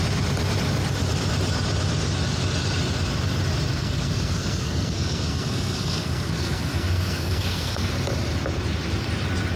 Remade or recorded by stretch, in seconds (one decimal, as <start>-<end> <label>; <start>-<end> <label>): 0.0-3.7 recorded; 3.7-7.9 remade; 7.9-9.6 recorded